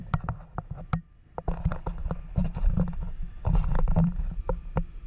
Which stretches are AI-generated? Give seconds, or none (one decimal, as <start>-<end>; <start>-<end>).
0.0-1.0; 2.4-4.2